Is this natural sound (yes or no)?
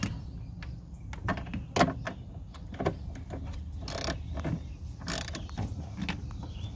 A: yes